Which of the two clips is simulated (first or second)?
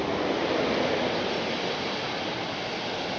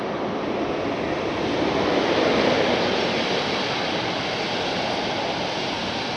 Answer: second